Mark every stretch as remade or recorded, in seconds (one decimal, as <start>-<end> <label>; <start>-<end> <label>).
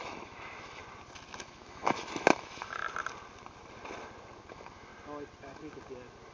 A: 0.0-0.8 remade; 0.8-1.4 recorded; 1.4-2.8 remade; 2.8-4.5 recorded; 4.5-4.9 remade; 4.9-6.3 recorded